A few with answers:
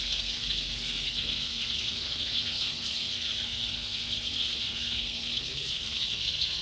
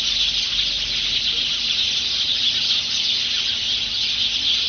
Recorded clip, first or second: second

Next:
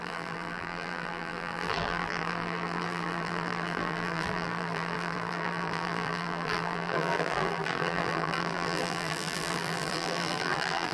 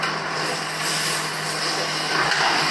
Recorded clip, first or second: second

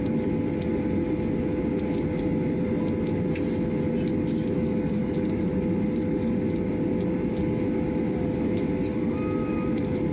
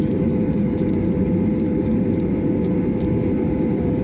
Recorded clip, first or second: first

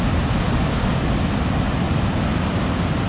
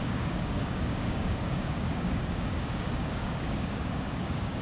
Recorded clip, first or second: first